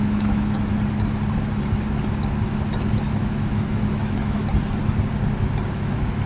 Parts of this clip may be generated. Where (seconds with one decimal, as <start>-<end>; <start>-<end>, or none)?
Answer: 0.0-0.7; 3.2-4.4; 5.7-6.3